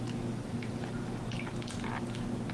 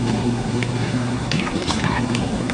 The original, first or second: first